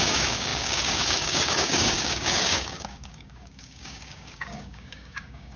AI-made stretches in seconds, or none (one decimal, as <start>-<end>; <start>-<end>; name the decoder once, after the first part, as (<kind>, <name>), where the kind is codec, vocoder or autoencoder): 0.0-5.6 (codec, DAC)